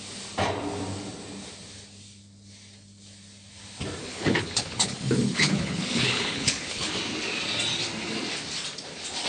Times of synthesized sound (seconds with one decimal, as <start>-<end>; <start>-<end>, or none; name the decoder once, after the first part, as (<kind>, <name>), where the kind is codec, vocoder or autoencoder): 4.0-7.0 (codec, HILCodec)